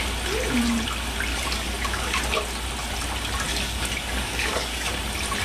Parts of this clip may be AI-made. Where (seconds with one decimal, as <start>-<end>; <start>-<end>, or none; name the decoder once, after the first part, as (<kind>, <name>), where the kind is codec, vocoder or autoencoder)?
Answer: 1.3-2.2 (codec, DAC); 3.5-4.9

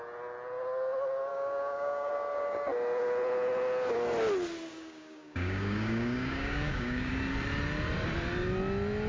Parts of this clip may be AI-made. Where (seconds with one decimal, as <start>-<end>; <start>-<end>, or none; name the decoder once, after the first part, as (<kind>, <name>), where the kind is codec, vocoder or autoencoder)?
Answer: 1.3-2.1 (codec, DAC); 4.7-7.1

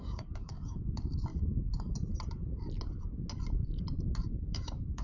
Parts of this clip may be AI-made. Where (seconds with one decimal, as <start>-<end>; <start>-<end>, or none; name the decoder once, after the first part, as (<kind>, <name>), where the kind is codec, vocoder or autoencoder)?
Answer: 0.0-1.3 (codec, DAC); 4.3-5.0

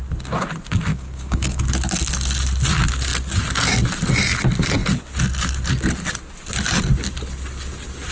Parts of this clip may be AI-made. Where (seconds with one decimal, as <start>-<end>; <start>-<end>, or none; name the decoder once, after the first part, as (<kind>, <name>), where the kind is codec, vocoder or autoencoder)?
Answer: 0.9-1.6 (codec, DAC)